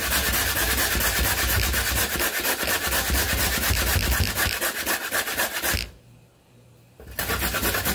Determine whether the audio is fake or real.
real